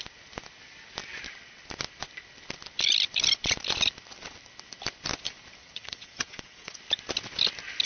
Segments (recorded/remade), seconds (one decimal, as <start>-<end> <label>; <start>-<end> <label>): 0.0-5.6 recorded; 5.6-6.8 remade; 6.8-7.9 recorded

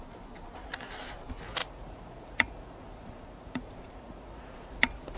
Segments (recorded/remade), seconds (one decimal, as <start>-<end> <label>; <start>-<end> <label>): 0.0-1.6 recorded; 1.6-4.7 remade; 4.7-5.2 recorded

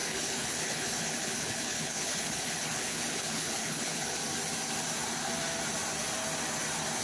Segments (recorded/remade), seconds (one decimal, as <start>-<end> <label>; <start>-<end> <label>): 0.0-4.2 remade; 4.2-7.0 recorded

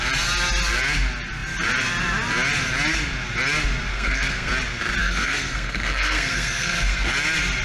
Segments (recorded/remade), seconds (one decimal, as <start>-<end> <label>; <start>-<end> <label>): 0.0-3.9 recorded; 3.9-4.5 remade; 4.5-5.0 recorded; 5.0-7.1 remade; 7.1-7.6 recorded

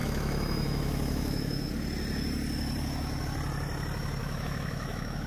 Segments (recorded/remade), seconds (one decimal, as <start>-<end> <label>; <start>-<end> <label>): 0.0-1.7 remade; 1.7-4.2 recorded; 4.2-5.3 remade

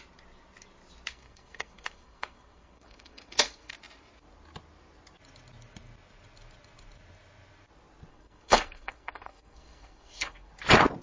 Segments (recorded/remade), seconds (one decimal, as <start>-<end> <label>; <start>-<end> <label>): 0.0-1.1 recorded; 1.1-3.7 remade; 3.7-8.1 recorded; 8.1-10.5 remade; 10.5-11.0 recorded